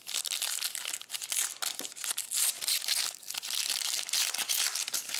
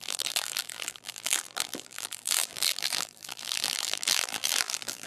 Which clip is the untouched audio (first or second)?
first